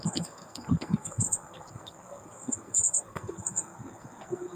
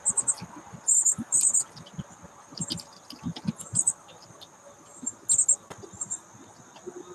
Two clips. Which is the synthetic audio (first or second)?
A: first